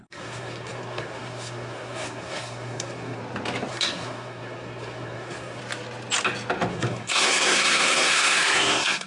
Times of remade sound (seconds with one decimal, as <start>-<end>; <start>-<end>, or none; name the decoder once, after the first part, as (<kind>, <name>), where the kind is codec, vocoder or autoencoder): 0.0-3.2 (codec, SNAC); 3.7-5.6; 6.7-9.1